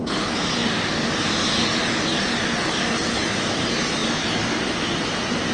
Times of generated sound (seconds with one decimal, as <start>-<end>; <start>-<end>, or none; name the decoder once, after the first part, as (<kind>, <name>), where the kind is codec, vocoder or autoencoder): none